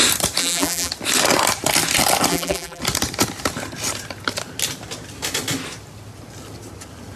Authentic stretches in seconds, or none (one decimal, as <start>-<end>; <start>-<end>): 0.0-0.4; 0.9-2.3; 2.8-7.2